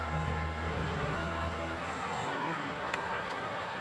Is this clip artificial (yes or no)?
yes